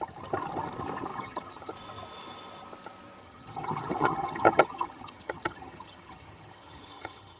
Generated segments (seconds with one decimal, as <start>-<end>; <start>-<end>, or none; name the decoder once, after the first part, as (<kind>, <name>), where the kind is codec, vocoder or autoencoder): 1.1-1.7 (vocoder, HiFi-GAN); 3.2-7.4